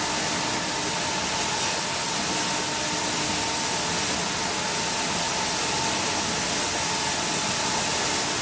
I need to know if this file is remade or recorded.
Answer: recorded